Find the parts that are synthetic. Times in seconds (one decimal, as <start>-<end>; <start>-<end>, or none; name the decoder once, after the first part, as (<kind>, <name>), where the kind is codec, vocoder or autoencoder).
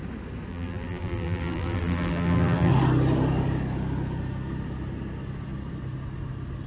0.5-2.7 (vocoder, BigVGAN v2)